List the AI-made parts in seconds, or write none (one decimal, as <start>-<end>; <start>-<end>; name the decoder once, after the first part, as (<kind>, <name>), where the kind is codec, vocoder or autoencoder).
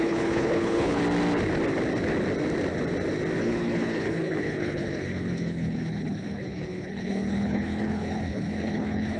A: 0.0-1.0 (codec, HILCodec); 3.4-9.2